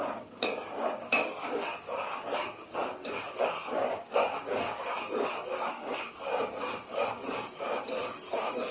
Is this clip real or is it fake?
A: fake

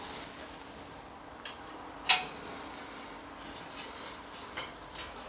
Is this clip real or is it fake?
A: real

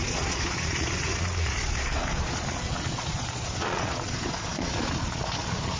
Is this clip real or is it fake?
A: fake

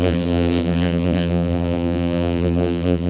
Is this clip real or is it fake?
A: fake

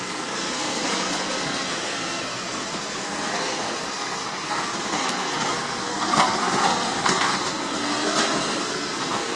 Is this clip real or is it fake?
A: fake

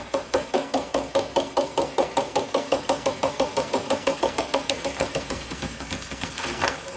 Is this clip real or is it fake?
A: fake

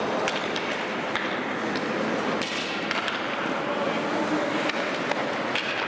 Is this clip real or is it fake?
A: real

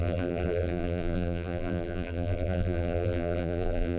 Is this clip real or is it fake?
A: fake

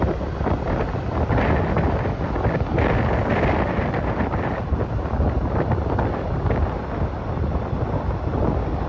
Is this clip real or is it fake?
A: real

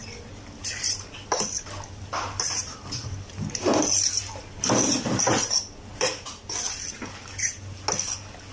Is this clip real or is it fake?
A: real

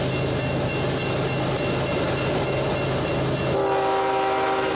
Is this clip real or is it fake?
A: real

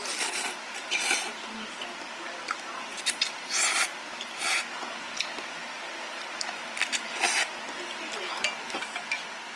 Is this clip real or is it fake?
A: real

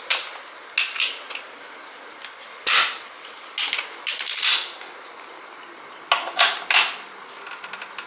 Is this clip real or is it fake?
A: real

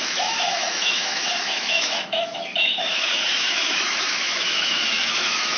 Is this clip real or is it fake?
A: fake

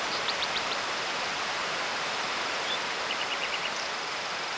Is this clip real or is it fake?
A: fake